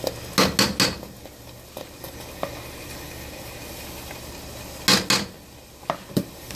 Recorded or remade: recorded